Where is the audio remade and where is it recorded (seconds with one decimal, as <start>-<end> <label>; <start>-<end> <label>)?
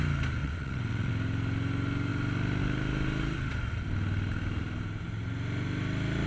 0.0-0.4 recorded; 0.4-1.1 remade; 1.1-6.3 recorded